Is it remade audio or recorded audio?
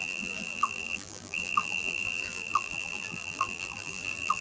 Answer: remade